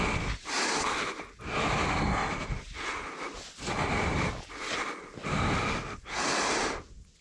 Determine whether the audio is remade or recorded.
recorded